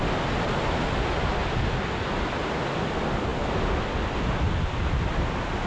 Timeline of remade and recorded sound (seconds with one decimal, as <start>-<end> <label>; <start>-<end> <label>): 0.0-5.7 recorded

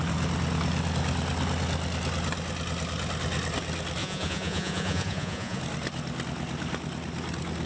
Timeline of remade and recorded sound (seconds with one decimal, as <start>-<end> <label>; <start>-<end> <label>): 0.0-4.0 recorded; 4.0-5.6 remade; 5.6-7.7 recorded